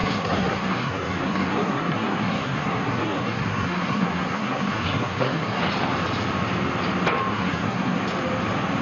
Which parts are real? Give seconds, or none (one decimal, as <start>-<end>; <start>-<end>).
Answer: 5.6-7.3; 8.0-8.8